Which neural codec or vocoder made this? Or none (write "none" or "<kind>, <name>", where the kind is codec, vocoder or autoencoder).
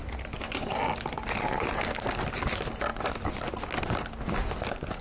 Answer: none